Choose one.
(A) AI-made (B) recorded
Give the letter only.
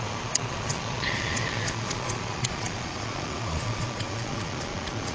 A